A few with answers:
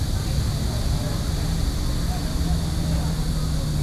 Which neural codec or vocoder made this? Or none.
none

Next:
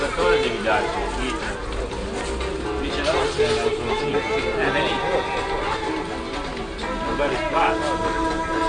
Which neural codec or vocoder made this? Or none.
none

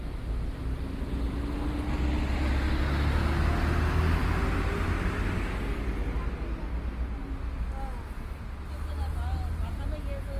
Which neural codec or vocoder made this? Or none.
none